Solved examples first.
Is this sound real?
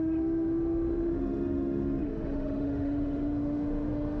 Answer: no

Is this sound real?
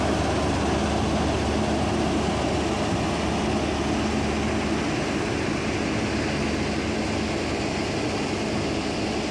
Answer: yes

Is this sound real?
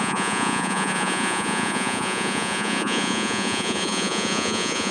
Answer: no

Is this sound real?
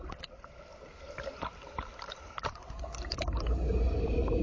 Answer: no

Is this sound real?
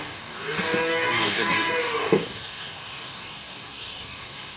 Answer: no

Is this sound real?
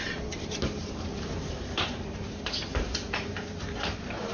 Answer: no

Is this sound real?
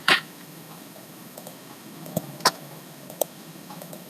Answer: no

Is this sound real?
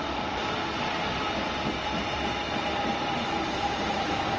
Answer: yes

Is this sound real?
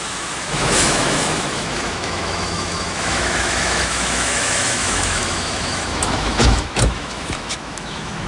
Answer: no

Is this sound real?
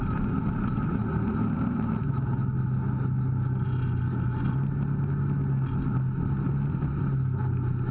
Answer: yes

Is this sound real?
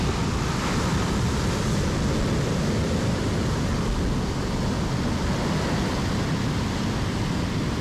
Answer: yes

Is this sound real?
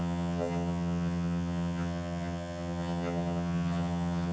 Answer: no